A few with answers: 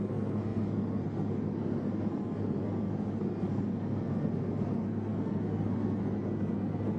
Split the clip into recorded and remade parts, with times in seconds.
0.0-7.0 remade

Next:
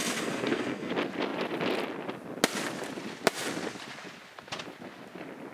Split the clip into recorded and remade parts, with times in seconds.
0.0-0.9 remade; 0.9-5.5 recorded

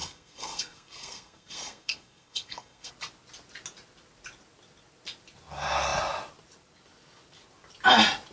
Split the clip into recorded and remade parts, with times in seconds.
0.0-2.9 remade; 2.9-8.3 recorded

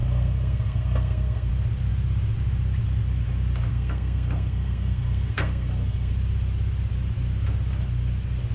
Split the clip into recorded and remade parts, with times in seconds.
0.0-1.5 remade; 1.5-3.7 recorded; 3.7-6.1 remade; 6.1-8.5 recorded

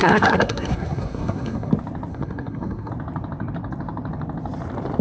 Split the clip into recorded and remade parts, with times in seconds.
0.0-1.7 remade; 1.7-2.1 recorded; 2.1-2.9 remade; 2.9-5.0 recorded